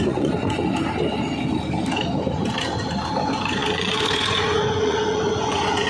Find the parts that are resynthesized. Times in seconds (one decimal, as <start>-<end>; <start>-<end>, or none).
0.0-0.6; 3.2-5.9

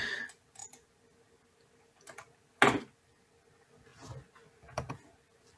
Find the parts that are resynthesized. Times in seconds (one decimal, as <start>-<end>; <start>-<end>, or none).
none

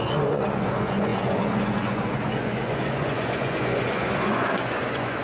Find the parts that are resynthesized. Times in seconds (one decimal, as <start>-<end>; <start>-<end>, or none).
0.0-5.2

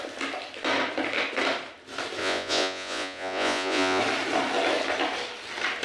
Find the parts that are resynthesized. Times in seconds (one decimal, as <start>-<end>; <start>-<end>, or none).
2.2-4.0

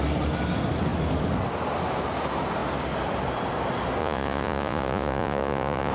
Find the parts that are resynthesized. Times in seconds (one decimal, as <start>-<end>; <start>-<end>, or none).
4.0-5.9